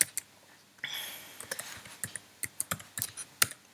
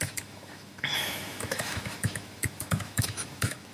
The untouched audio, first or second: first